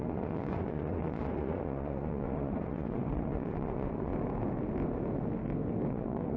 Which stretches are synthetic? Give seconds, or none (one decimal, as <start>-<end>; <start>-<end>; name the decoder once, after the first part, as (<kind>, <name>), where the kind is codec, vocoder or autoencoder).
0.0-4.1 (vocoder, Vocos); 5.9-6.4